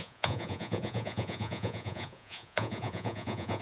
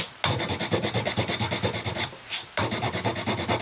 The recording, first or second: second